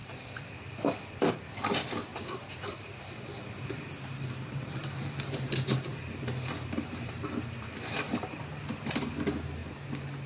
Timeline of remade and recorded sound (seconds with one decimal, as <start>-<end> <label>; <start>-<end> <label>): 0.0-1.3 remade; 1.3-2.1 recorded; 2.1-5.2 remade; 5.2-5.9 recorded; 5.9-8.4 remade; 8.4-10.3 recorded